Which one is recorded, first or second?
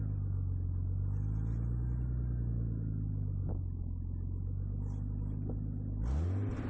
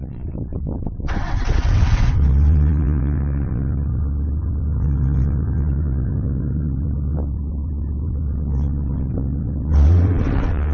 first